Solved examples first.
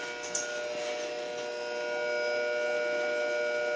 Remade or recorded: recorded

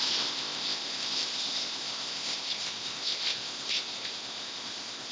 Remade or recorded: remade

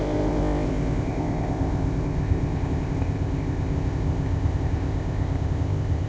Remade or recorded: remade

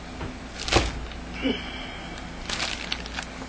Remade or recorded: recorded